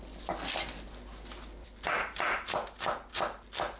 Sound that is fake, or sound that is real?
real